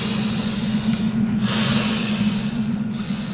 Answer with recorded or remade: remade